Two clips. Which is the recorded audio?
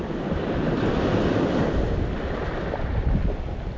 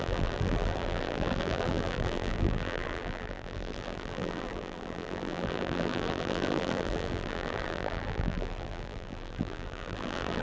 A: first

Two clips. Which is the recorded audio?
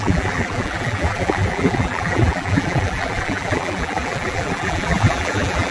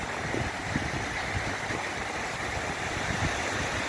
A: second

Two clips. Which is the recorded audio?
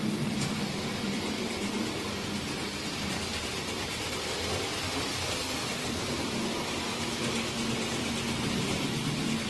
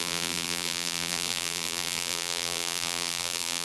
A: first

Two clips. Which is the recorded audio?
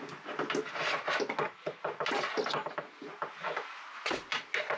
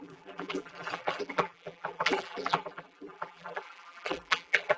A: first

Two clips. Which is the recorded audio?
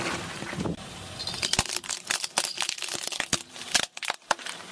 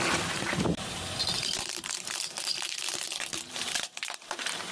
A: first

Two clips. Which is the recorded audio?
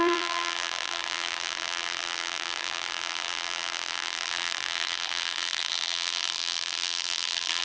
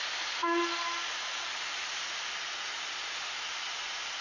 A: second